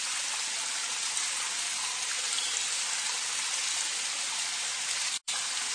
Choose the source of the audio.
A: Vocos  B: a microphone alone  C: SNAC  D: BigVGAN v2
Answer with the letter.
B